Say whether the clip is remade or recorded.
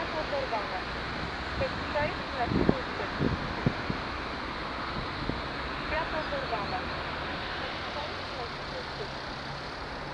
recorded